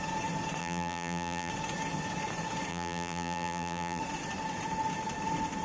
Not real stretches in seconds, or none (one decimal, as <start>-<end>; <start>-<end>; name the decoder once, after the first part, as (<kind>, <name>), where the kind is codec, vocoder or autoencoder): 0.6-1.5 (vocoder, BigVGAN v2); 2.7-4.0